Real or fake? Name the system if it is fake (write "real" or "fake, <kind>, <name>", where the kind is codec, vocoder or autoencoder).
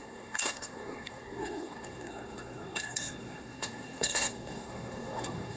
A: fake, codec, SNAC